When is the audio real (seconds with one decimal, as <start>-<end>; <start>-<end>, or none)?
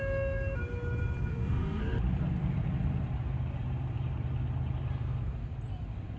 0.0-1.3; 1.8-6.2